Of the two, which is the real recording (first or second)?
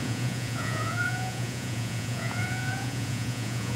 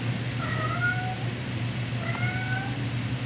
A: second